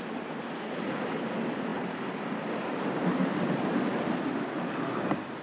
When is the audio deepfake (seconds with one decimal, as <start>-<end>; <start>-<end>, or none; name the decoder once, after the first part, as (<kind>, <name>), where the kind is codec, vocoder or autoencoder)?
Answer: none